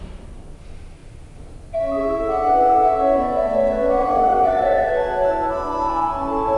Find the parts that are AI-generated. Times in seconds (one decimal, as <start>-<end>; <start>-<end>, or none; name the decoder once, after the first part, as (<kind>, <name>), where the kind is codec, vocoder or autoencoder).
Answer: 4.0-4.9 (vocoder, Vocos)